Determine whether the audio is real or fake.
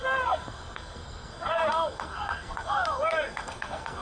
fake